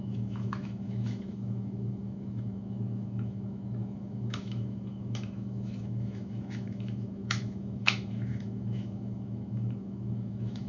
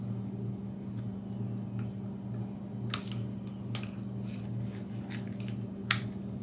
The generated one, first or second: first